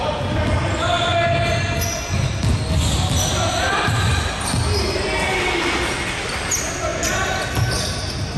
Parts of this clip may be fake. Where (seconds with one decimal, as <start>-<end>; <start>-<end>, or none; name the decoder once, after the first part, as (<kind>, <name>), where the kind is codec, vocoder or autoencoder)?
none